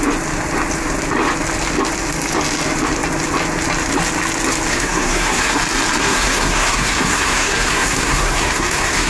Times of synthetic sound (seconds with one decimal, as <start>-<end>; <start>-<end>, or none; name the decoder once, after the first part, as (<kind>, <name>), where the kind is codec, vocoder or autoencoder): 4.7-5.5 (codec, SNAC); 6.0-9.1